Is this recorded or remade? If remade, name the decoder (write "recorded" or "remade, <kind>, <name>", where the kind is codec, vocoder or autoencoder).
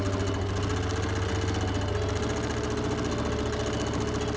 recorded